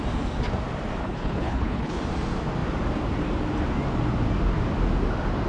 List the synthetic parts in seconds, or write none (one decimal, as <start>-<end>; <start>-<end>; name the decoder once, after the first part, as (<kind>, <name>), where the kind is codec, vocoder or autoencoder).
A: 1.0-2.0 (codec, HILCodec)